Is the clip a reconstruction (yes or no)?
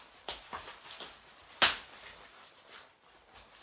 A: no